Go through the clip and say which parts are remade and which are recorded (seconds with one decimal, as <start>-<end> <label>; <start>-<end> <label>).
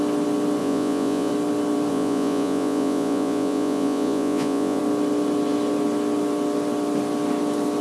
0.0-0.6 recorded; 0.6-1.3 remade; 1.3-1.9 recorded; 1.9-4.8 remade; 4.8-7.8 recorded